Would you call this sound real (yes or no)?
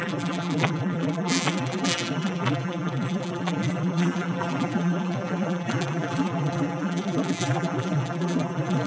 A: no